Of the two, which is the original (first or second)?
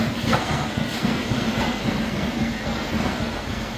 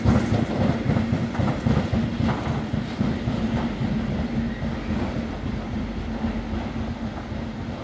second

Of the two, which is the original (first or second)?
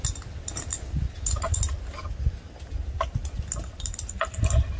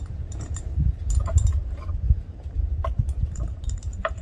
first